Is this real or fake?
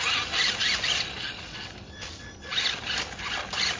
real